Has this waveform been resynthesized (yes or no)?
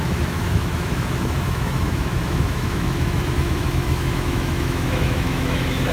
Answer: yes